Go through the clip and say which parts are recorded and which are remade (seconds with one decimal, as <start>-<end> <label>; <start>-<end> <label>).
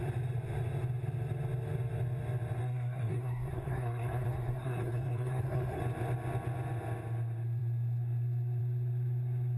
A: 0.0-2.6 recorded; 2.6-5.8 remade; 5.8-9.6 recorded